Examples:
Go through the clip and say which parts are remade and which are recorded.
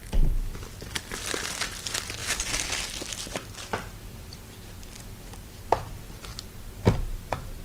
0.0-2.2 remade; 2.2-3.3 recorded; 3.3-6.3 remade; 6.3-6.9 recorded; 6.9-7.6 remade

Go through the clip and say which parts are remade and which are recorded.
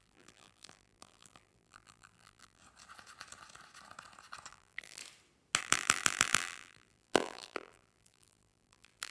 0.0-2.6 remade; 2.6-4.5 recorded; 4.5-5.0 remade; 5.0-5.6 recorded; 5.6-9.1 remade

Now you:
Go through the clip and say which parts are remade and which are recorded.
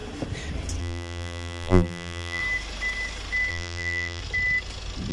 0.0-0.8 recorded; 0.8-2.4 remade; 2.4-3.5 recorded; 3.5-4.2 remade; 4.2-5.1 recorded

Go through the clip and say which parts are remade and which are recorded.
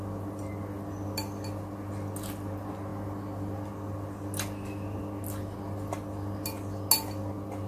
0.0-7.7 recorded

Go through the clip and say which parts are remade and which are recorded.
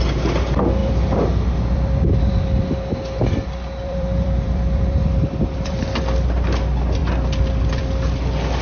0.0-0.8 recorded; 0.8-6.0 remade; 6.0-8.6 recorded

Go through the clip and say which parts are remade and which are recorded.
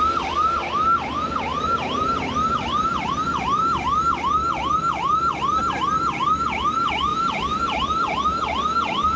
0.0-1.5 recorded; 1.5-4.0 remade; 4.0-7.1 recorded; 7.1-8.0 remade; 8.0-9.2 recorded